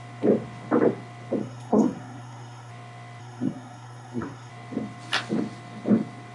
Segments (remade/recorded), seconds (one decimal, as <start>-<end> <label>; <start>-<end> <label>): 0.0-1.4 recorded; 1.4-2.7 remade; 2.7-3.2 recorded; 3.2-4.5 remade; 4.5-6.3 recorded